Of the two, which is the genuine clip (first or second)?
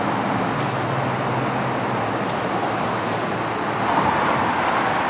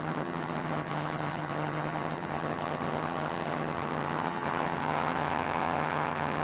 first